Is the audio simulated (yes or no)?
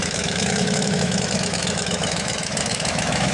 yes